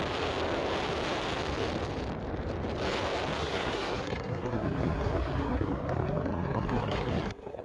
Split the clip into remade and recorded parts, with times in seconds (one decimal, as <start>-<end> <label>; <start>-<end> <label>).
0.0-3.4 recorded; 3.4-7.6 remade

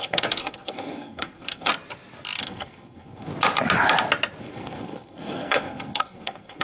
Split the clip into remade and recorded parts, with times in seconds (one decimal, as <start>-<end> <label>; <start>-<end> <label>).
0.0-1.7 remade; 1.7-2.4 recorded; 2.4-3.3 remade; 3.3-4.4 recorded; 4.4-6.6 remade

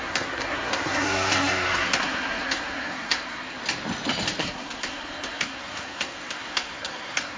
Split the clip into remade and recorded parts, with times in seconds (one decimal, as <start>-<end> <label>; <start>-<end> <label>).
0.0-3.6 remade; 3.6-4.4 recorded; 4.4-7.4 remade

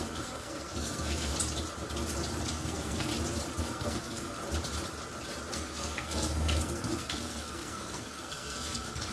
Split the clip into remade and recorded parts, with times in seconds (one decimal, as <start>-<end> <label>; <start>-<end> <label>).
0.0-1.3 remade; 1.3-2.5 recorded; 2.5-3.1 remade; 3.1-3.6 recorded; 3.6-4.4 remade; 4.4-5.5 recorded; 5.5-9.1 remade

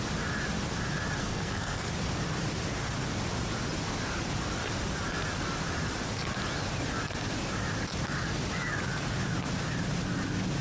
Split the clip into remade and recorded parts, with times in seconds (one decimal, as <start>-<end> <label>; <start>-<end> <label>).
0.0-1.2 recorded; 1.2-1.9 remade; 1.9-10.6 recorded